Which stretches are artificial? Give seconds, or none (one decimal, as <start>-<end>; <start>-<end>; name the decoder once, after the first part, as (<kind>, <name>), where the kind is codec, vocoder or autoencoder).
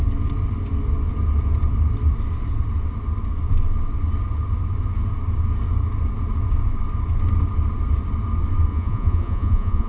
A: 8.7-9.9 (vocoder, Vocos)